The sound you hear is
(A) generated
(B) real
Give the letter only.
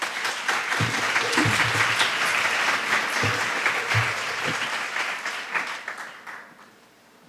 B